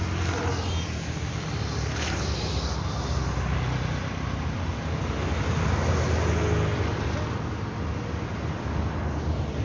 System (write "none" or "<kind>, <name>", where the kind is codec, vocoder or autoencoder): none